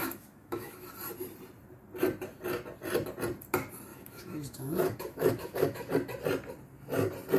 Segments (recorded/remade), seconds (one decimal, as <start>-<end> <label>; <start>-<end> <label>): 0.0-0.9 remade; 0.9-3.9 recorded; 3.9-5.9 remade; 5.9-7.4 recorded